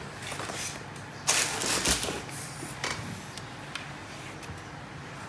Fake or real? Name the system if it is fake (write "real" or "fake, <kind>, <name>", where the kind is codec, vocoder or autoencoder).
real